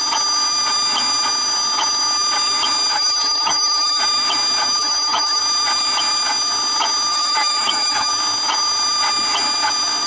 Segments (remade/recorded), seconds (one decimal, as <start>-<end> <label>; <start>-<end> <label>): 0.0-2.9 recorded; 2.9-4.0 remade; 4.0-4.8 recorded; 4.8-5.4 remade; 5.4-7.1 recorded; 7.1-8.1 remade; 8.1-10.1 recorded